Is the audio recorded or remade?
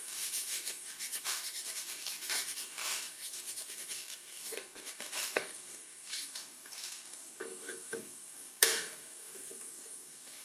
remade